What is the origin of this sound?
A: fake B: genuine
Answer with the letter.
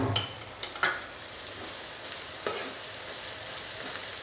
B